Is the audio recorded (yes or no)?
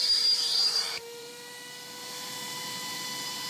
no